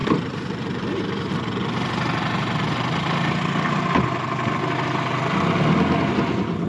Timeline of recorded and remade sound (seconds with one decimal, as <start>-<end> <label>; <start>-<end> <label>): 0.0-1.3 remade; 1.3-6.7 recorded